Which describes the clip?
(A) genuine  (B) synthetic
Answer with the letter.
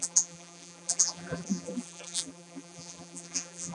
B